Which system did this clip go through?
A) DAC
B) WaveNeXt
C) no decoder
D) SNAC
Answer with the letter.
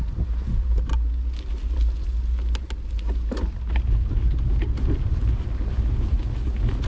C